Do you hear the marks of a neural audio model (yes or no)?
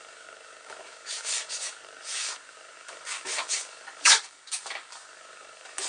yes